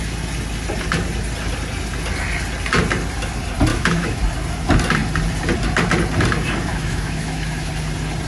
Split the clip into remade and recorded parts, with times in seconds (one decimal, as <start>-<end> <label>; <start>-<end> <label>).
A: 0.0-3.7 recorded; 3.7-4.2 remade; 4.2-6.7 recorded; 6.7-7.7 remade; 7.7-8.3 recorded